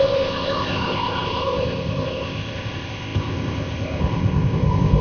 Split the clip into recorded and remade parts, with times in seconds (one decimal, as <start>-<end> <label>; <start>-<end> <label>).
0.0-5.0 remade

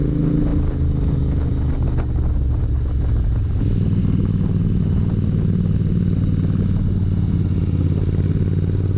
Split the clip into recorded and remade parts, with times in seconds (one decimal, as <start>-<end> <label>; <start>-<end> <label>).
0.0-9.0 recorded

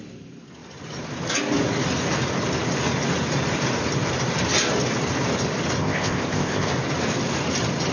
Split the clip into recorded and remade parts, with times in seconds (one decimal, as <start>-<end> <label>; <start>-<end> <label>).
0.0-5.8 recorded; 5.8-6.7 remade; 6.7-7.9 recorded

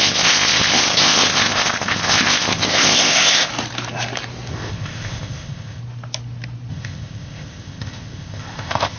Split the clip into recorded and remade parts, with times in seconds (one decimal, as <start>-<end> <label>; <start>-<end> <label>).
0.0-3.5 remade; 3.5-4.5 recorded; 4.5-5.8 remade; 5.8-6.7 recorded; 6.7-9.0 remade